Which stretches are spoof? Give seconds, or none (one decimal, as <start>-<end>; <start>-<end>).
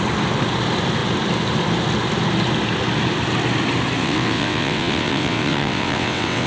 4.0-6.5